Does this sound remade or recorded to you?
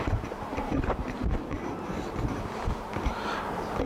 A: remade